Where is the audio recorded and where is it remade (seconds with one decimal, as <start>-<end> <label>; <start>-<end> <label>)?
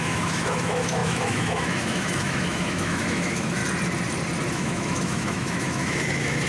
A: 0.0-3.6 remade; 3.6-4.5 recorded; 4.5-6.5 remade